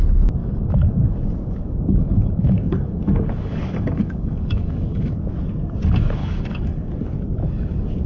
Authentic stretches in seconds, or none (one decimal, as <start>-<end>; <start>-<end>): 0.0-0.4; 5.3-6.2; 6.9-8.1